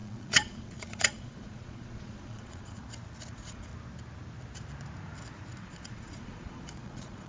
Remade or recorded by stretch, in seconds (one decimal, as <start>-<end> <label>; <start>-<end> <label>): 0.0-2.8 remade; 2.8-3.3 recorded; 3.3-3.7 remade; 3.7-5.6 recorded; 5.6-7.3 remade